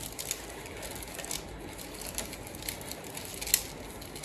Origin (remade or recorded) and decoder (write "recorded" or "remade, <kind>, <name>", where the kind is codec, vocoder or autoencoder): recorded